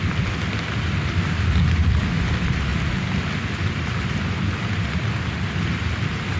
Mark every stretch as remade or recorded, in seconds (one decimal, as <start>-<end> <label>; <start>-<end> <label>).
0.0-6.4 recorded